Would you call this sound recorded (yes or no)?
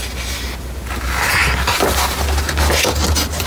yes